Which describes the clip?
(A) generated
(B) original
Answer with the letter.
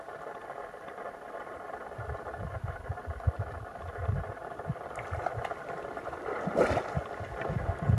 B